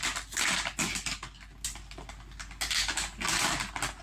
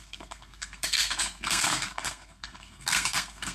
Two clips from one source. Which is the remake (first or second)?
second